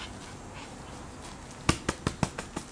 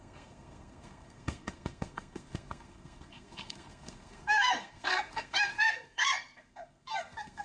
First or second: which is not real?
second